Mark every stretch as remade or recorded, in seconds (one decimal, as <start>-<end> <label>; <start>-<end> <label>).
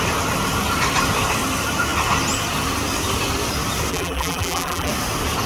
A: 0.0-3.9 recorded; 3.9-4.9 remade; 4.9-5.5 recorded